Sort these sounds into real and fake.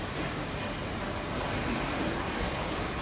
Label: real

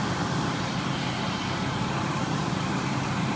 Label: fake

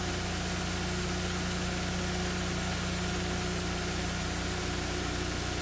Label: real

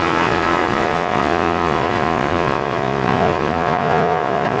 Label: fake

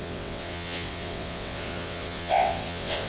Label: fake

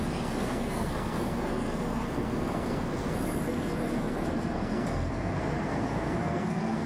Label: fake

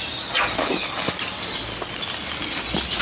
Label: real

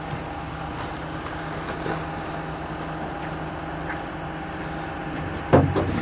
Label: real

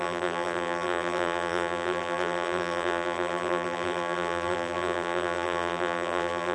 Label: fake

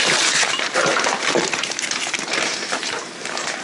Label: fake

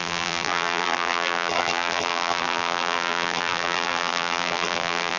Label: fake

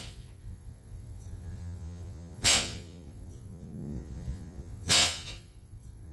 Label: fake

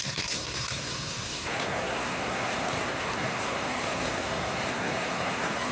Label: fake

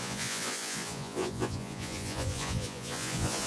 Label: fake